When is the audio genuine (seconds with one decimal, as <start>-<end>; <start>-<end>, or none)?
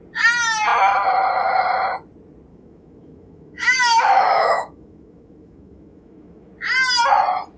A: 0.0-2.5; 6.5-7.6